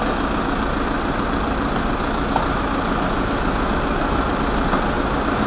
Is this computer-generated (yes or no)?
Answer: no